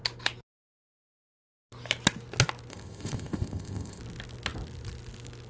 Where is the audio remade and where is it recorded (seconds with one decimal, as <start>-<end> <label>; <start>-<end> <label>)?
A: 0.0-2.7 recorded; 2.7-4.0 remade; 4.0-5.5 recorded